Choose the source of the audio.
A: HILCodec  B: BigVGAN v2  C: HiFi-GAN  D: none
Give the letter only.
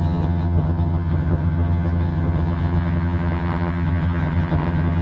C